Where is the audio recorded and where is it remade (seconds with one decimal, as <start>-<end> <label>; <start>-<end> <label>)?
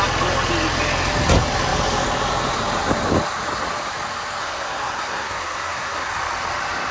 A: 0.0-4.4 recorded; 4.4-6.1 remade; 6.1-6.9 recorded